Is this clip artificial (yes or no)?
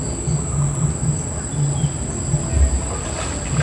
no